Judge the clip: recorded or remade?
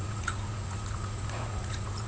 remade